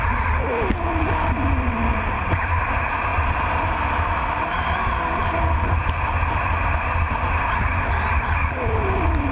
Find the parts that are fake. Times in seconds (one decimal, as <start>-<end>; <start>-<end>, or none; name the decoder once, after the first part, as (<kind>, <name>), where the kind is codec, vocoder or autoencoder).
1.9-2.6 (vocoder, BigVGAN v2); 3.1-3.7

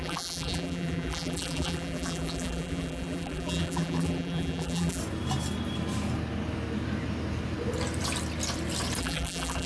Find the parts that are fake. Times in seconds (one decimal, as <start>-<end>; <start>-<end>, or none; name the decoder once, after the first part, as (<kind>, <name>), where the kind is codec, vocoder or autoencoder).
0.0-5.0 (vocoder, BigVGAN v2); 9.0-9.7

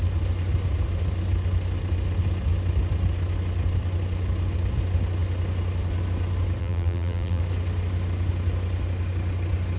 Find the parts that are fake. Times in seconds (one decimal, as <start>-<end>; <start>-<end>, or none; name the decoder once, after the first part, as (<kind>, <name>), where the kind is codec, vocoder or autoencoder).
6.6-7.4 (vocoder, BigVGAN v2)

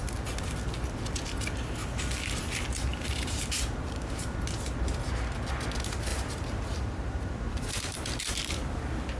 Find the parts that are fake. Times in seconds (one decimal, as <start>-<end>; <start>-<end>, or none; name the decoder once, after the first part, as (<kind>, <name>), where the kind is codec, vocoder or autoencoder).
2.9-4.4 (vocoder, BigVGAN v2); 6.1-7.7

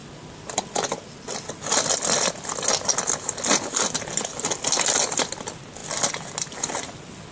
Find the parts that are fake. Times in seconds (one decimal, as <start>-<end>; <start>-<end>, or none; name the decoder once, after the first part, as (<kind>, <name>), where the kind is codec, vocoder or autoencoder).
0.0-1.6 (vocoder, BigVGAN v2)

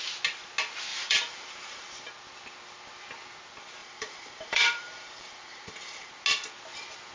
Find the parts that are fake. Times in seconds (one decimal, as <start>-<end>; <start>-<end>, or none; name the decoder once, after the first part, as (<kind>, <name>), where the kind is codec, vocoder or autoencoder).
0.9-2.1 (vocoder, BigVGAN v2); 3.8-6.1

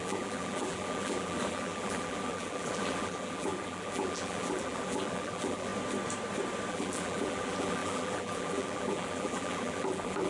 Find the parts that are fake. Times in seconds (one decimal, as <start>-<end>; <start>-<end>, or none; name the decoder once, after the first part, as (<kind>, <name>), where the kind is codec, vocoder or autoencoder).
0.0-5.7 (vocoder, BigVGAN v2); 6.7-10.3

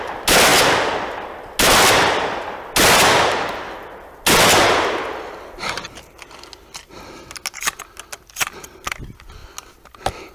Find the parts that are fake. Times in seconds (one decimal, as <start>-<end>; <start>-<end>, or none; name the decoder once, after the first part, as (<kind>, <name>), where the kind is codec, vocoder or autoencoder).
none